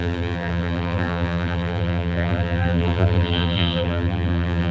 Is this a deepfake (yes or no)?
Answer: yes